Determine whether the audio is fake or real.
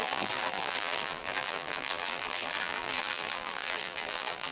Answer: fake